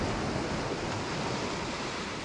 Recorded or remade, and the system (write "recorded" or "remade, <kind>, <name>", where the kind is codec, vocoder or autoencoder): recorded